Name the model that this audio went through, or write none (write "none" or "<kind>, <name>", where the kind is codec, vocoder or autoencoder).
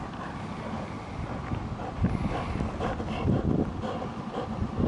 none